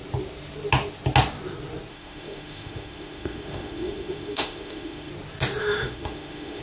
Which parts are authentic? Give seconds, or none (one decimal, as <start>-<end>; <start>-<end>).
0.0-1.9; 5.1-5.6